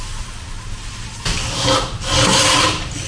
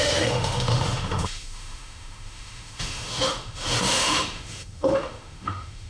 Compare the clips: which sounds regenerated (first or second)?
second